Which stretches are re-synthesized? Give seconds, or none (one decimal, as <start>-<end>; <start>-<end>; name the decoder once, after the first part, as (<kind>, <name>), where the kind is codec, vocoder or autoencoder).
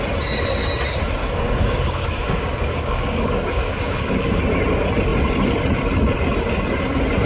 1.2-4.4 (codec, DAC)